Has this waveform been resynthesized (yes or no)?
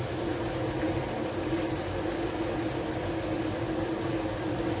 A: no